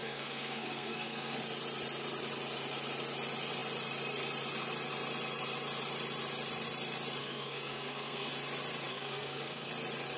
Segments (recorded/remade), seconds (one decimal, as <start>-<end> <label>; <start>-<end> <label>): 0.0-1.4 remade; 1.4-7.2 recorded; 7.2-8.3 remade; 8.3-8.9 recorded; 8.9-9.7 remade; 9.7-10.2 recorded

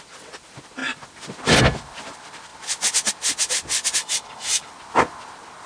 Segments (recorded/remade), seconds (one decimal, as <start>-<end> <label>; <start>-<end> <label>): 0.0-4.0 recorded; 4.0-4.7 remade; 4.7-5.7 recorded